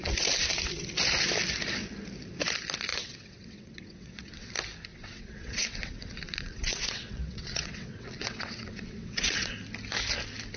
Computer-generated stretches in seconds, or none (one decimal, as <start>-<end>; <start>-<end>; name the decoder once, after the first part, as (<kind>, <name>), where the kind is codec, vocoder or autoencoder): 2.9-4.5 (vocoder, WaveNeXt); 4.9-9.5

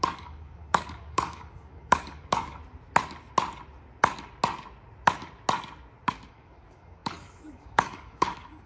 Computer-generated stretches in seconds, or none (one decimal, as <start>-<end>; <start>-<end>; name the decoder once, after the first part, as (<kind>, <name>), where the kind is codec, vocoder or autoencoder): 0.0-2.6 (codec, DAC); 6.3-8.7

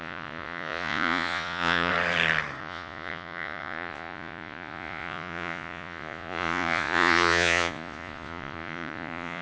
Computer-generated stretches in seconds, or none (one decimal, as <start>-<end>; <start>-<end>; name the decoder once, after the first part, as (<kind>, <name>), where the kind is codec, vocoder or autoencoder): 0.0-1.9 (vocoder, Vocos); 2.6-9.4